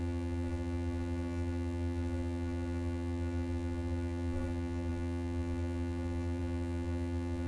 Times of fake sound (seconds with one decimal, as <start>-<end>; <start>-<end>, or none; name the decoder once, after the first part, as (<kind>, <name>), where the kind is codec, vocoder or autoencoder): 0.0-7.5 (vocoder, BigVGAN v2)